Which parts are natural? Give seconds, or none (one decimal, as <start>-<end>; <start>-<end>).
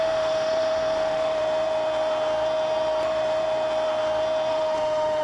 1.4-4.5